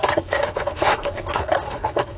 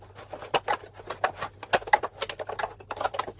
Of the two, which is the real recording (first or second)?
second